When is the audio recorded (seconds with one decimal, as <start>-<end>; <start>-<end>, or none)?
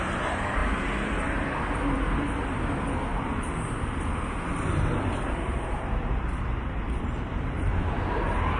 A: 0.0-3.1; 7.7-8.6